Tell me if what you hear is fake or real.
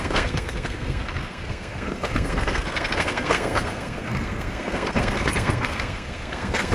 fake